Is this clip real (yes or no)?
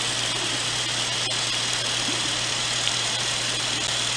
yes